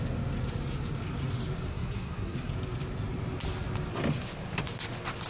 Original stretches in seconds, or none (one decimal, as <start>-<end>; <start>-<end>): 0.0-1.7; 2.5-5.3

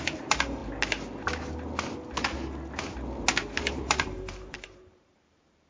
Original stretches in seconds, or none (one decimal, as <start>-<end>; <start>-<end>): 0.6-3.7

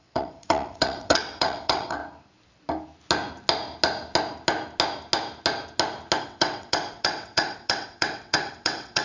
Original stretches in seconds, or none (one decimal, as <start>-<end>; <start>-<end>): 2.0-6.2

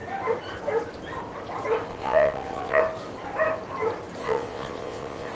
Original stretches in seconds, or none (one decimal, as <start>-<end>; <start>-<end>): 0.0-1.9; 2.8-4.2

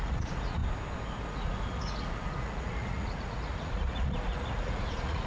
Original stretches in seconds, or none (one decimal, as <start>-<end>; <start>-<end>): 0.6-1.2

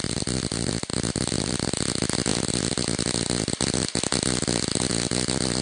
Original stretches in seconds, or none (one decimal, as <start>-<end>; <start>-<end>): 0.0-5.6

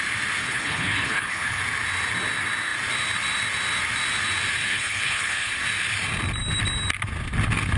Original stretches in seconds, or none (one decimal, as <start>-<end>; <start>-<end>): 0.0-0.4; 1.6-4.7; 5.5-7.8

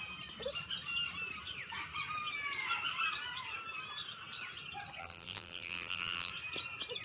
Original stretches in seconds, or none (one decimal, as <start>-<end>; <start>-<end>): 0.0-5.0; 6.3-7.0